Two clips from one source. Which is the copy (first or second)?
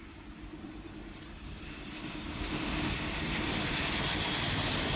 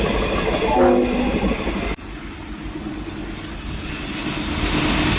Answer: first